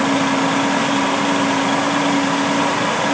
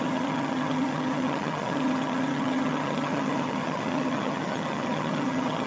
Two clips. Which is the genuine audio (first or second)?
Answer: first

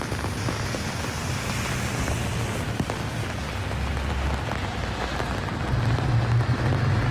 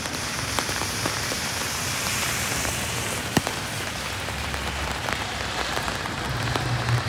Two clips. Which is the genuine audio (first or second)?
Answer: first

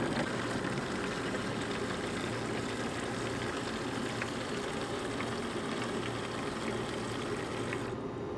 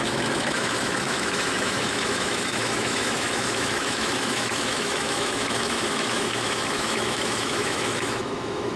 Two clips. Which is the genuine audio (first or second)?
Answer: first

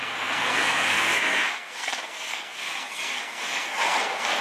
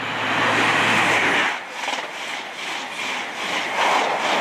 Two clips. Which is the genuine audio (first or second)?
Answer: second